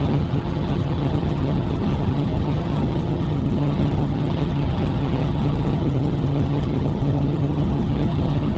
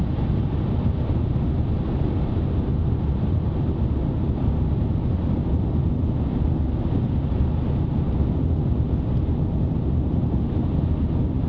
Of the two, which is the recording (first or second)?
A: second